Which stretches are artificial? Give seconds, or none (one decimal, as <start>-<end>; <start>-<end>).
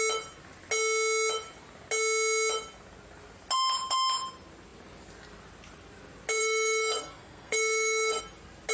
6.4-8.2